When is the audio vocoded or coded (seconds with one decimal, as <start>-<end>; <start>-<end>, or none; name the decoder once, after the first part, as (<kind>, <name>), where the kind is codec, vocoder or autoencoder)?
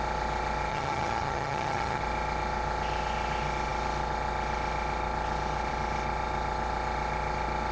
0.7-2.0 (vocoder, HiFi-GAN)